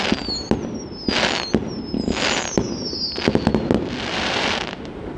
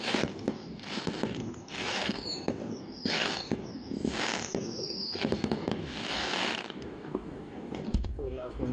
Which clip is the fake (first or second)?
second